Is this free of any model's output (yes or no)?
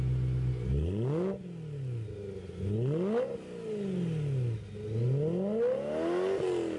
yes